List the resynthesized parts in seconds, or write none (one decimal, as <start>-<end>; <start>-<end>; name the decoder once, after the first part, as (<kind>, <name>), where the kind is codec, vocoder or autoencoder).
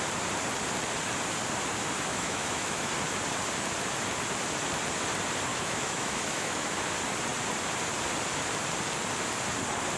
2.1-2.9 (autoencoder, DAC-VAE); 5.5-6.8